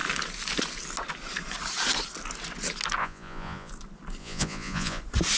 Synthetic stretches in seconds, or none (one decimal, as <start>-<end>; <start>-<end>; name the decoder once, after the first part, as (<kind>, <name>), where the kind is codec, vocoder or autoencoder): 3.0-3.7 (vocoder, Vocos); 4.2-5.0